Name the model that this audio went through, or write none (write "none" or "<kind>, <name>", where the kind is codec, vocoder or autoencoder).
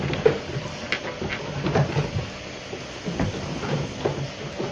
none